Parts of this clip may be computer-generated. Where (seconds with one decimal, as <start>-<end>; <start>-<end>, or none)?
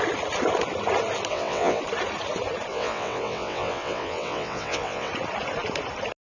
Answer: 1.3-1.8; 2.7-5.1